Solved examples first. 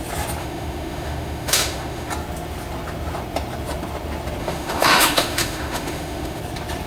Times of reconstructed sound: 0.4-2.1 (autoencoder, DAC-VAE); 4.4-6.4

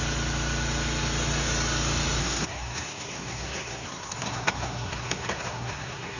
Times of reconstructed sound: 2.2-6.2 (codec, SNAC)

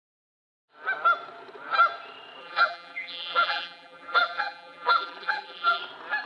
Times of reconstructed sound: 2.4-5.8 (vocoder, BigVGAN v2)